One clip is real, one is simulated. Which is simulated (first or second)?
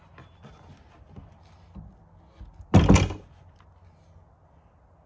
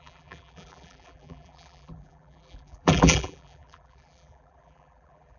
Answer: second